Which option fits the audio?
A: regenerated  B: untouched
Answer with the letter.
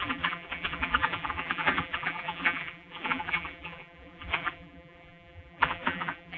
A